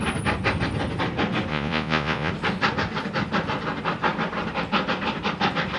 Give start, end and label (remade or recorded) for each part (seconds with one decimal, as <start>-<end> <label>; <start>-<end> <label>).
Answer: 0.0-1.5 recorded; 1.5-2.3 remade; 2.3-5.8 recorded